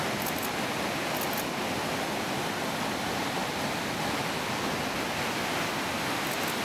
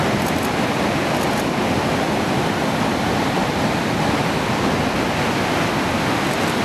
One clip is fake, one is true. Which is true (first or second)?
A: first